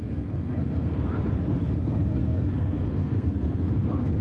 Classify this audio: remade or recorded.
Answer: remade